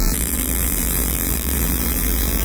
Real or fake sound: fake